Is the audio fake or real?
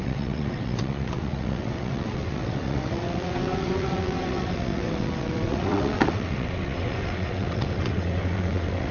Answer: fake